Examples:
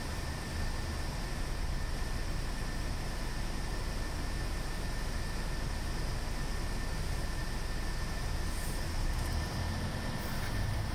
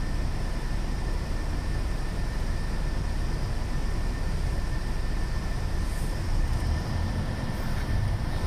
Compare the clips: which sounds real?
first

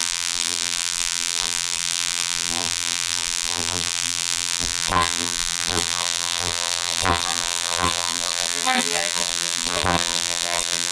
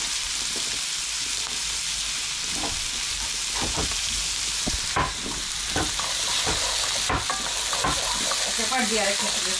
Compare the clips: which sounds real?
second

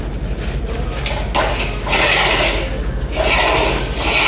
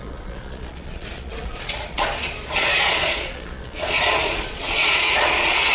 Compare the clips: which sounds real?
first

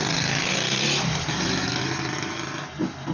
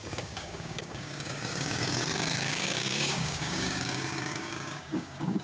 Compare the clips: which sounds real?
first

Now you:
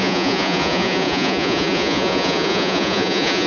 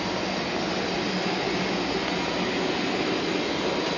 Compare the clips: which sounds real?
second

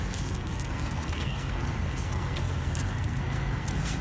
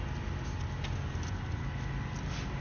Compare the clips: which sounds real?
second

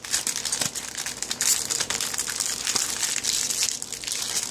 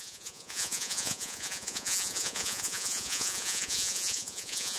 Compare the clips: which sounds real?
first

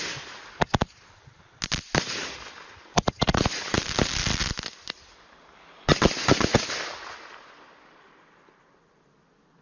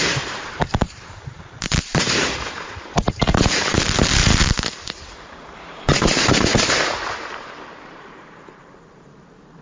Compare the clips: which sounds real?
first